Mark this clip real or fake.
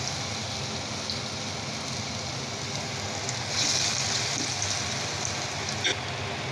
real